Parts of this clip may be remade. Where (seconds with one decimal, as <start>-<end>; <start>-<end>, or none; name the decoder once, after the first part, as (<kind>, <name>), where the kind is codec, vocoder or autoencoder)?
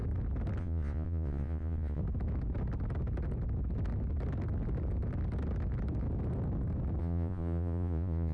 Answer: 0.6-2.0 (vocoder, Vocos); 7.0-8.3